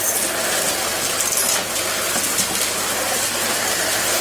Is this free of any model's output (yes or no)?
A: yes